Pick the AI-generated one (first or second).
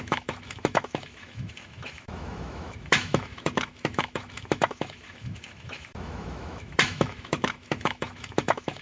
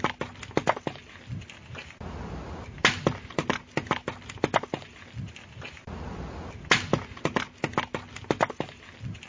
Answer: first